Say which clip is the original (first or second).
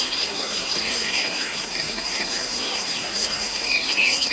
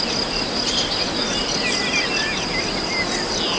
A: second